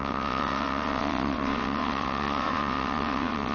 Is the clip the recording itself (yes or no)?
no